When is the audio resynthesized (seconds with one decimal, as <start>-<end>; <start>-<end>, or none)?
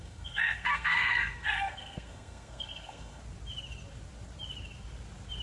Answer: 0.0-3.2